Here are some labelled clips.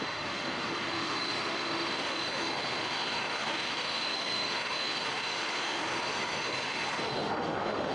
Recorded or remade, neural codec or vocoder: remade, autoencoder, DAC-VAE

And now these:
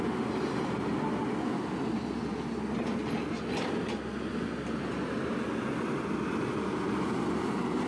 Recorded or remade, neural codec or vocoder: recorded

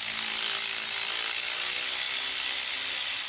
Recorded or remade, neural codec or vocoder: recorded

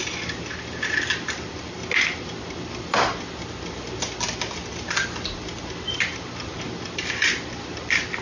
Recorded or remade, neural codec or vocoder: recorded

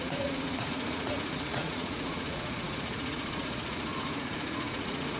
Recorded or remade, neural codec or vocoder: remade, vocoder, Vocos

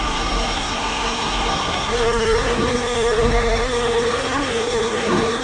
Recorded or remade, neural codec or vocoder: remade, codec, SNAC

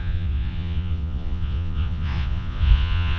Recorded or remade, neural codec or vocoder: remade, vocoder, Vocos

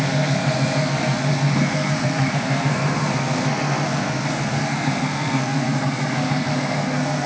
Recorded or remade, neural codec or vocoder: remade, codec, SNAC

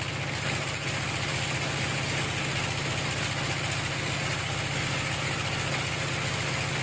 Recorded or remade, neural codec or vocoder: recorded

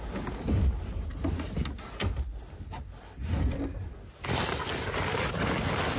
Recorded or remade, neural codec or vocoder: recorded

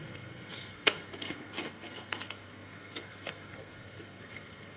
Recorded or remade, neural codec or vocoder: remade, codec, SNAC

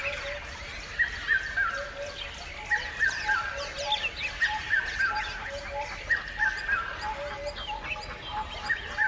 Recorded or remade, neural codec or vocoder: recorded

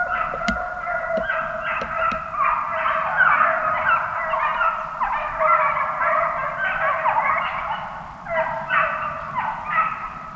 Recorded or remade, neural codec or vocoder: recorded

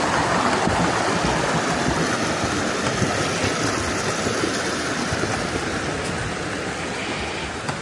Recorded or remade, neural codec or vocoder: recorded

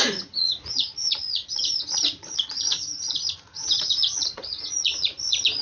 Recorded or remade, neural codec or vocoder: remade, vocoder, Vocos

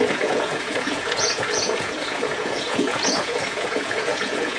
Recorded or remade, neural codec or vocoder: remade, vocoder, Vocos